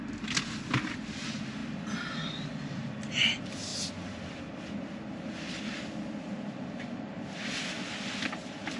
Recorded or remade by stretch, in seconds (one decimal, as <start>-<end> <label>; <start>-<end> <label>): 0.0-8.8 recorded